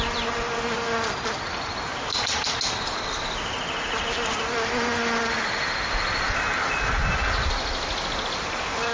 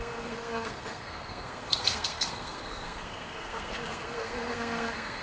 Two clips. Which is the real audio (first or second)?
first